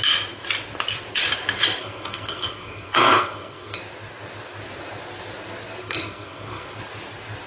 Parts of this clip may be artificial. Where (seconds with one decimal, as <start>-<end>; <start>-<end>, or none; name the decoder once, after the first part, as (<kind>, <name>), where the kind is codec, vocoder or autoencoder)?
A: 1.8-3.8 (codec, SNAC); 5.8-6.8